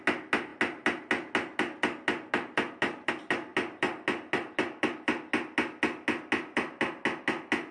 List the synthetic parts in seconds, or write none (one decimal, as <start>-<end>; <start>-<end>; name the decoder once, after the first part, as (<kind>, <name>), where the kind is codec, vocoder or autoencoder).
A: none